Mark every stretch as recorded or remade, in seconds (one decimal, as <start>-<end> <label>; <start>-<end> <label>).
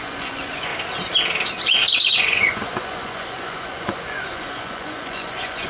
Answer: 0.0-0.7 remade; 0.7-2.1 recorded; 2.1-5.7 remade